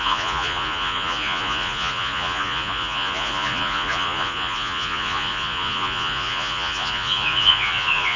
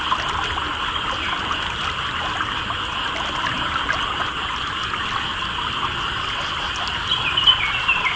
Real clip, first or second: second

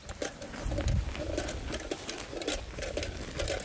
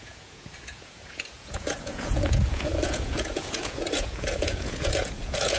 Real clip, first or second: first